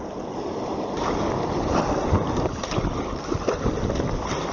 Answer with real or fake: real